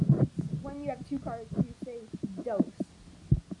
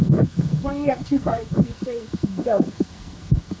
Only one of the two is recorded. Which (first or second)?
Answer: first